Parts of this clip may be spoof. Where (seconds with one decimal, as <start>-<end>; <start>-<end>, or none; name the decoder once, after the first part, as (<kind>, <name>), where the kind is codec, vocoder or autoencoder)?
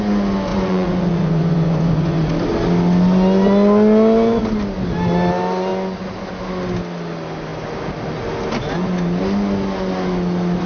0.5-2.3 (vocoder, Vocos)